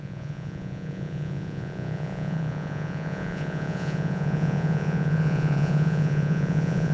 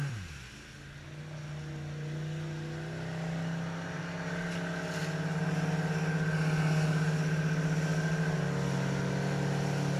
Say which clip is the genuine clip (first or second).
second